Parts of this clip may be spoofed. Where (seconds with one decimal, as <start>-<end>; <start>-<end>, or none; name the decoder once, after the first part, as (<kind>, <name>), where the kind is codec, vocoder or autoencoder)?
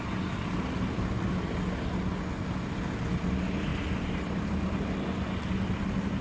none